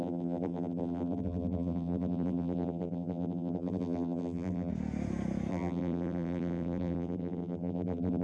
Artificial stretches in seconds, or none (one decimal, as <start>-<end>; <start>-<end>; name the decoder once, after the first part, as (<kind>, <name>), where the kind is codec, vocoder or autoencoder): 0.0-4.7 (vocoder, BigVGAN v2); 5.5-8.2